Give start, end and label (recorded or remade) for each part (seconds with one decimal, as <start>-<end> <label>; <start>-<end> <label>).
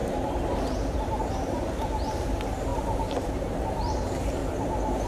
0.0-4.4 remade; 4.4-5.1 recorded